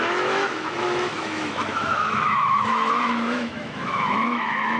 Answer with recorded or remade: remade